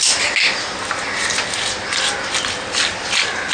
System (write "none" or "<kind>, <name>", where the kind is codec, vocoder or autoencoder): none